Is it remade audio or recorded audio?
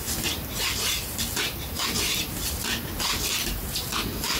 recorded